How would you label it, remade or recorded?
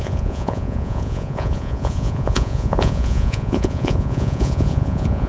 remade